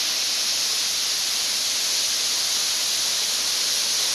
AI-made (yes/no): no